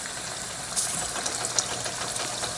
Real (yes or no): yes